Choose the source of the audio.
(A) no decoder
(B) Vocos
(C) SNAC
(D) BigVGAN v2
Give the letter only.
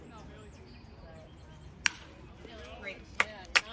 A